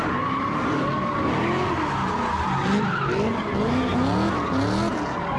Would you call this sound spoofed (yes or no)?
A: no